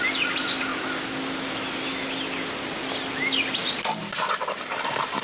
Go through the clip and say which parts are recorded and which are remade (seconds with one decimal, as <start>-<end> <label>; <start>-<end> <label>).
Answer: 0.0-5.2 recorded